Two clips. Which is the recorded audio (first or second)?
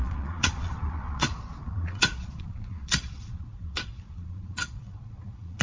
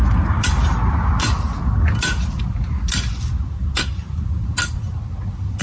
second